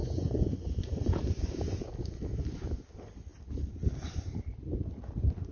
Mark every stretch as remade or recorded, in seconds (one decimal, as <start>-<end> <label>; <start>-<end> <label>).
0.0-1.1 remade; 1.1-5.5 recorded